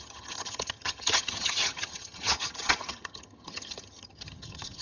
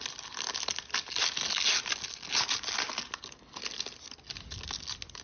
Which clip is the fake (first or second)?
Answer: first